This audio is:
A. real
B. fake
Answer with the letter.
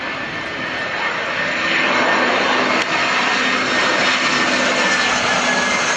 A